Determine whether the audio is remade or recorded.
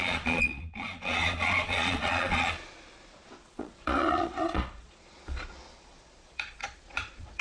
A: remade